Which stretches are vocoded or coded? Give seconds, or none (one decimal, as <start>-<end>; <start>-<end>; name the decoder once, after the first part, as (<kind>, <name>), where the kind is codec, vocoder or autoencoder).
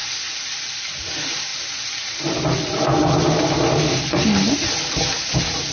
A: none